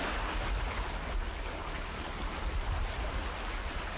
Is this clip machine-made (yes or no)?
no